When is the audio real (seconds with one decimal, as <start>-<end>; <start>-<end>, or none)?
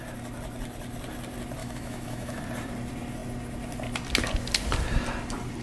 0.0-1.6; 2.4-5.6